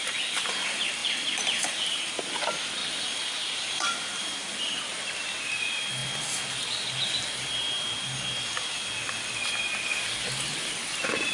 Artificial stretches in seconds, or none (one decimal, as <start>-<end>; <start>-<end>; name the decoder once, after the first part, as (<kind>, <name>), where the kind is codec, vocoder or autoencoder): 1.0-2.1 (vocoder, BigVGAN v2); 2.8-4.6